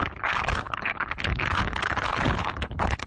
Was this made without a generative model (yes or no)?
no